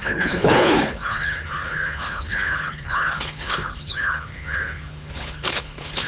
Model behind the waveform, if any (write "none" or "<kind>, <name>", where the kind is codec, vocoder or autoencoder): codec, HILCodec